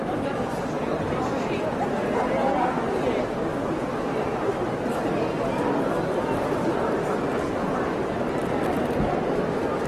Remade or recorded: recorded